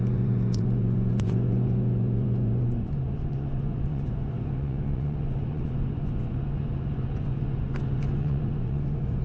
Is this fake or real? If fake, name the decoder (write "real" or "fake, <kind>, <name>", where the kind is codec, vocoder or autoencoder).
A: fake, vocoder, Vocos